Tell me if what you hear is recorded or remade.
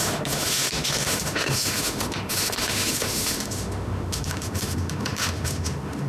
remade